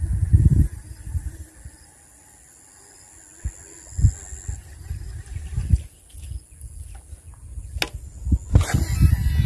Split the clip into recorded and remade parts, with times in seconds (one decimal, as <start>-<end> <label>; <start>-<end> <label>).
0.0-0.5 recorded; 0.5-1.5 remade; 1.5-9.5 recorded